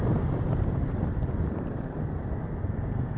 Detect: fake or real real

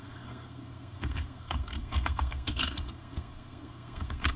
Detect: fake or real fake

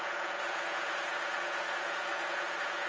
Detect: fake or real fake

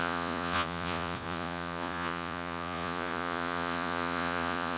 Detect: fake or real fake